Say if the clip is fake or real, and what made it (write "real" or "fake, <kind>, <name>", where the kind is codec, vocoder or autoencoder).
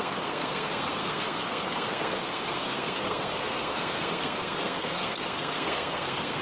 fake, codec, SNAC